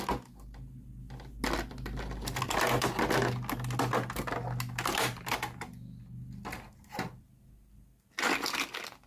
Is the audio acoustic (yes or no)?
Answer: yes